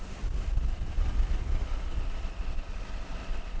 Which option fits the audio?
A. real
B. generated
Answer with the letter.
A